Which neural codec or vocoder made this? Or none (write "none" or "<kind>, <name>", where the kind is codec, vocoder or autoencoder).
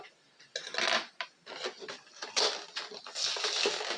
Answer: none